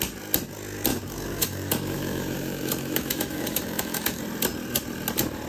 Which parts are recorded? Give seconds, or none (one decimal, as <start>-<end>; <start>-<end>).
0.0-0.9; 4.2-5.5